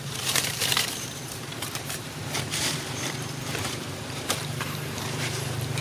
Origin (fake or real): fake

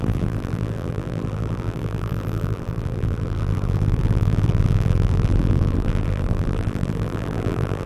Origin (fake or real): fake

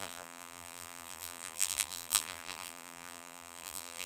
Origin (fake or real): fake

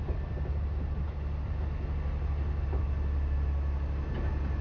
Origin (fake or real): real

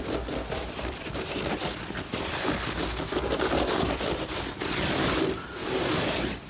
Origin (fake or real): fake